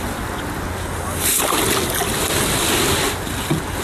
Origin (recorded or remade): recorded